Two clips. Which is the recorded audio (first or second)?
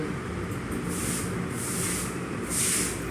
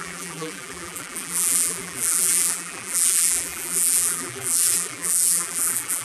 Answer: first